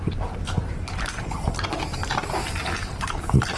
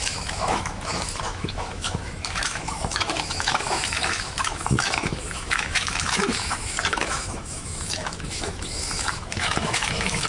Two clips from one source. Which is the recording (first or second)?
first